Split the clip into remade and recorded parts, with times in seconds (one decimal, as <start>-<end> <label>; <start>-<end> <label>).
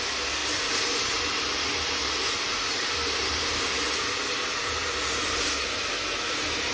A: 0.0-0.4 recorded; 0.4-3.6 remade; 3.6-4.8 recorded; 4.8-5.4 remade; 5.4-6.7 recorded